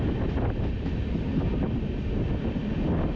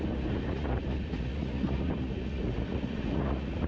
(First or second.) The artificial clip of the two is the second